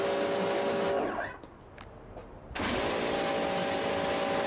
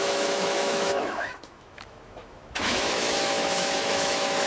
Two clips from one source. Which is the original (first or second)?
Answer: first